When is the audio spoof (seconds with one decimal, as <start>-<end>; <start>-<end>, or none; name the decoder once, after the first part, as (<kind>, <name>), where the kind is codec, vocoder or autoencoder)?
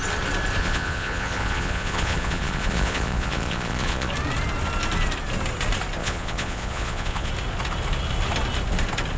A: 0.6-4.1 (vocoder, Vocos); 6.0-7.3